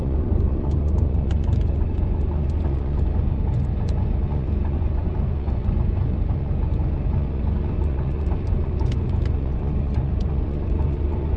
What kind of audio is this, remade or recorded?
remade